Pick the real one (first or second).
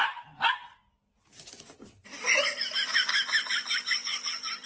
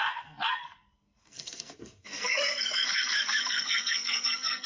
first